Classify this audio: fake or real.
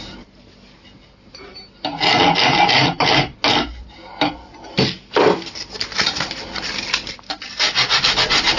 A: real